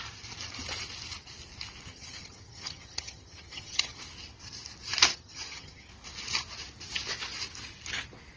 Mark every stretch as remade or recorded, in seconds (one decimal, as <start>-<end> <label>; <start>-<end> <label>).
0.0-1.9 recorded; 1.9-4.0 remade; 4.0-5.1 recorded; 5.1-5.9 remade; 5.9-8.4 recorded

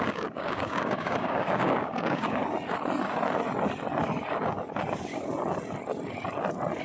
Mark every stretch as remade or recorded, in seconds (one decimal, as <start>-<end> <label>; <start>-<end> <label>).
0.0-2.4 remade; 2.4-6.8 recorded

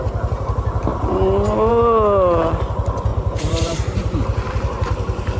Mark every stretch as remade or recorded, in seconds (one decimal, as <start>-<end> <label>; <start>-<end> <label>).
0.0-3.1 recorded; 3.1-4.2 remade; 4.2-5.4 recorded

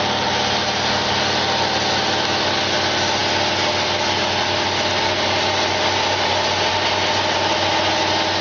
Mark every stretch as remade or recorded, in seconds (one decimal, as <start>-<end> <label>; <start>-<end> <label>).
0.0-8.4 recorded

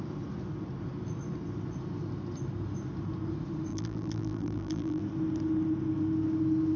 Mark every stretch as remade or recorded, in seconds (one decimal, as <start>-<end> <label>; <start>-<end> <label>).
0.0-3.7 recorded; 3.7-5.0 remade; 5.0-6.8 recorded

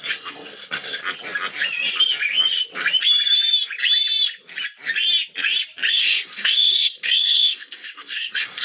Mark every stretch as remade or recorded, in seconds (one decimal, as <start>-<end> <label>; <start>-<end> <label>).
0.0-1.0 remade; 1.0-5.9 recorded; 5.9-8.6 remade

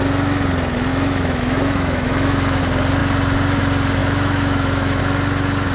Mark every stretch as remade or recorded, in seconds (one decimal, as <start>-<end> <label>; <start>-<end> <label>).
0.0-0.9 recorded; 0.9-2.6 remade; 2.6-4.0 recorded; 4.0-5.0 remade; 5.0-5.7 recorded